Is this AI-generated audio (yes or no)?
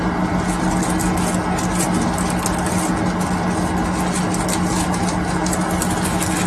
no